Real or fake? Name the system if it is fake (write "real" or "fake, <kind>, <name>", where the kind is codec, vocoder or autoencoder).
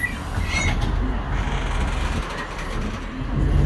real